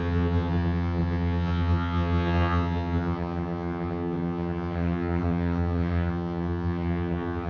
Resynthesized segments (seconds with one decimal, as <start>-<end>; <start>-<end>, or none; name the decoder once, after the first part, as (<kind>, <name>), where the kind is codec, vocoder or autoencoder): 0.0-7.5 (vocoder, HiFi-GAN)